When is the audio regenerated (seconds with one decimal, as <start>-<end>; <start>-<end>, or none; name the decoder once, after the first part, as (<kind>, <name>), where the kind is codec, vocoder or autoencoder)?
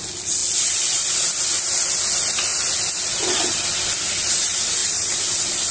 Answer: 2.5-3.7 (vocoder, BigVGAN v2)